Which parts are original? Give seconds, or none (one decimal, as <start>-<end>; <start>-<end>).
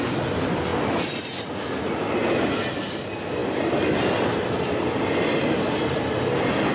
0.0-6.7